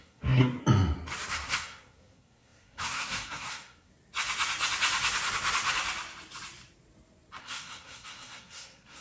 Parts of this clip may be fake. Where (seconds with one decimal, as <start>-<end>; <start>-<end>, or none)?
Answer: 0.0-0.6; 1.3-3.9; 7.4-9.0